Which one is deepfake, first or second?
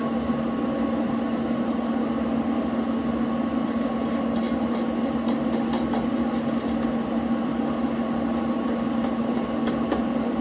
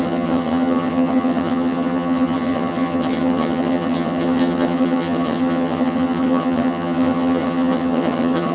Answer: second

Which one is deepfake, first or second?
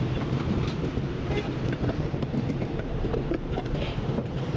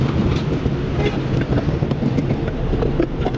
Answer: first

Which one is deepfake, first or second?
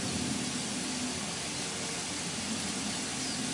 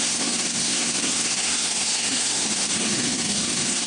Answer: second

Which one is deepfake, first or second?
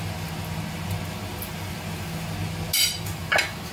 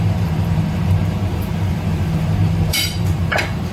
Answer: second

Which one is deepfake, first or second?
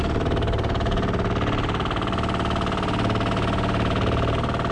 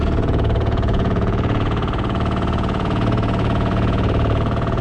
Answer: second